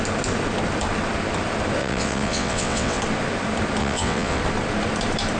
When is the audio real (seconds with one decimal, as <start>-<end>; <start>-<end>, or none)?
0.0-1.8; 3.0-3.8; 4.4-5.4

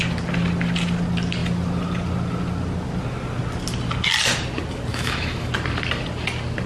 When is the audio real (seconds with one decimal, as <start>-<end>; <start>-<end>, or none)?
0.0-4.9; 5.5-6.7

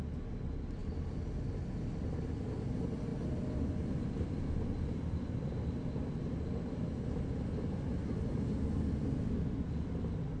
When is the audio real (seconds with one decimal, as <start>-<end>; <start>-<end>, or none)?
0.0-10.4